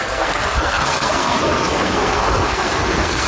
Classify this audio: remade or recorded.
remade